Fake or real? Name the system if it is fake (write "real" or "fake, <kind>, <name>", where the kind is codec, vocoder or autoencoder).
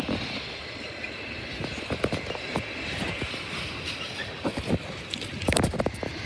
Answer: fake, vocoder, BigVGAN v2